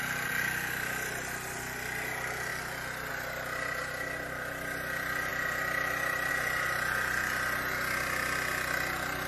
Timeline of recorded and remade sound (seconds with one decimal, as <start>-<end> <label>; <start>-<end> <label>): 0.0-9.3 recorded